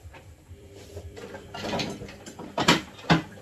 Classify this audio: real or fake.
fake